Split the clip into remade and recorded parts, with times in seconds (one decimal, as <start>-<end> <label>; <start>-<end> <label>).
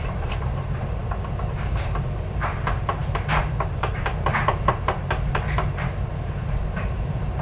0.0-1.0 remade; 1.0-1.6 recorded; 1.6-7.4 remade